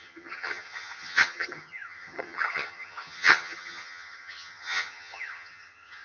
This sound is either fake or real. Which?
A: fake